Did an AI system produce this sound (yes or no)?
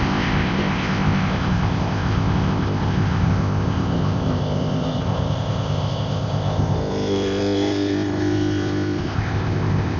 yes